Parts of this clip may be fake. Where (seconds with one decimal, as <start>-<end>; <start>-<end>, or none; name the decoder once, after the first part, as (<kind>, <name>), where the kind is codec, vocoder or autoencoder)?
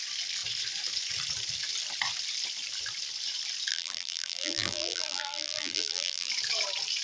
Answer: 3.7-6.3 (vocoder, BigVGAN v2)